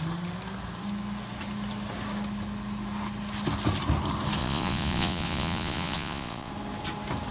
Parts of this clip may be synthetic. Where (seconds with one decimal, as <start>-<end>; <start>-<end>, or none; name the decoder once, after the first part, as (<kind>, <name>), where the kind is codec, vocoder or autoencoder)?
4.4-6.5 (vocoder, Vocos)